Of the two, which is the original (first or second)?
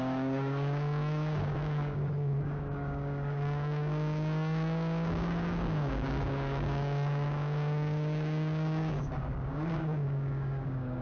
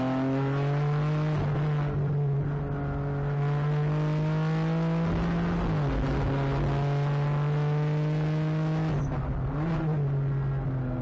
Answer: second